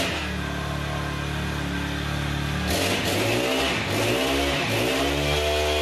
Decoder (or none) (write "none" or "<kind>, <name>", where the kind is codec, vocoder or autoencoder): none